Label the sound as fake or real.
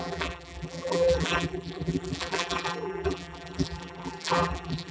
fake